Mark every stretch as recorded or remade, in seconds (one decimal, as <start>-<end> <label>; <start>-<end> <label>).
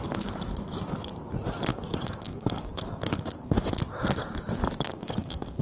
0.0-1.7 recorded; 1.7-3.5 remade; 3.5-4.9 recorded; 4.9-5.6 remade